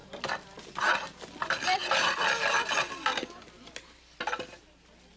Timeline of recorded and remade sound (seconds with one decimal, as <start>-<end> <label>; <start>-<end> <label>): 0.0-5.2 recorded